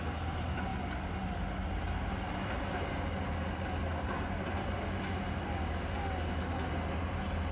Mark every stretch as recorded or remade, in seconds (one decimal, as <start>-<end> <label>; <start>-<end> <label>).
0.0-7.5 recorded